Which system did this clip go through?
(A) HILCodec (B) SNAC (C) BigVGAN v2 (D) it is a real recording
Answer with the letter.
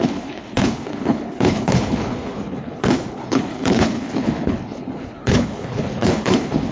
A